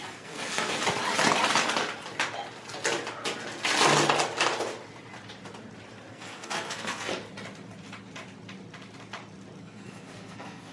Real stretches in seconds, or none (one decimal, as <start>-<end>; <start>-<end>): 0.8-6.1; 7.1-9.6